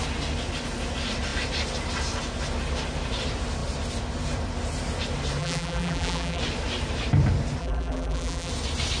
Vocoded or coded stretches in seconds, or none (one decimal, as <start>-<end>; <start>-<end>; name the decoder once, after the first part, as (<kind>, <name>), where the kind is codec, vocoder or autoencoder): 5.4-6.4 (vocoder, BigVGAN v2); 7.6-8.5